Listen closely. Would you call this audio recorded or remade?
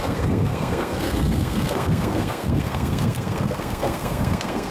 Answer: remade